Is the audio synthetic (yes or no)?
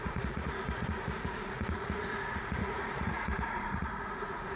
yes